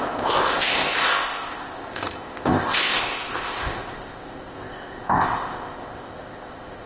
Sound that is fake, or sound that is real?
fake